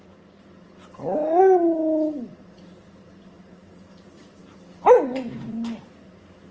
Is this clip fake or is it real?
real